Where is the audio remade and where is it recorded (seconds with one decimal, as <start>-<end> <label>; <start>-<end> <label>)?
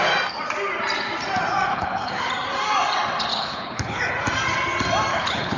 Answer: 0.0-1.7 recorded; 1.7-2.3 remade; 2.3-3.3 recorded; 3.3-4.0 remade; 4.0-5.1 recorded; 5.1-5.6 remade